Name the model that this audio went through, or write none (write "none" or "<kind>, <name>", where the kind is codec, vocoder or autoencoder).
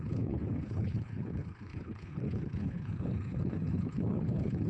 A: codec, HILCodec